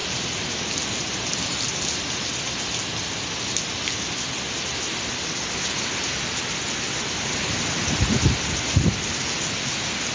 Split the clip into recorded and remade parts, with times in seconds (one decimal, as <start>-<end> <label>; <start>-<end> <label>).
0.0-0.7 remade; 0.7-10.1 recorded